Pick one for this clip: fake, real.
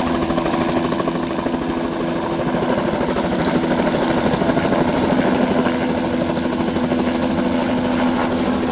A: real